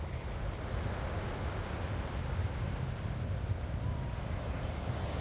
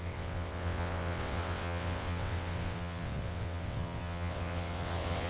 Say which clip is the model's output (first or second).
second